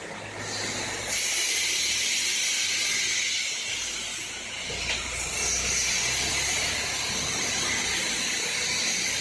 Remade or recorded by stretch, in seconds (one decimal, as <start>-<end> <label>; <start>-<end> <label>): 0.0-9.2 recorded